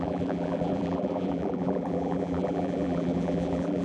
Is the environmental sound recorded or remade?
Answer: remade